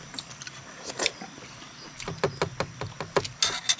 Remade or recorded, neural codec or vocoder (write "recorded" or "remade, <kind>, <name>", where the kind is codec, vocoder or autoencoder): recorded